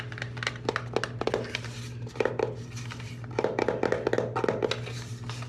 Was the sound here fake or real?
real